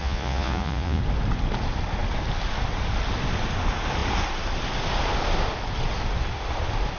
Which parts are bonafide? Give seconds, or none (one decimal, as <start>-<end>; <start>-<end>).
1.0-7.0